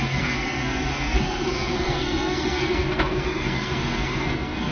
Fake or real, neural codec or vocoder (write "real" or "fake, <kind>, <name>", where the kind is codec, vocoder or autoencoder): fake, codec, SNAC